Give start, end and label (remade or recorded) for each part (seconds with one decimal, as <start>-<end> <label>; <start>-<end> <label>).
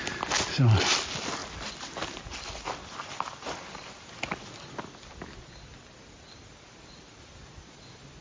0.0-8.2 recorded